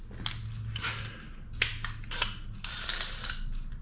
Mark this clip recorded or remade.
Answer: recorded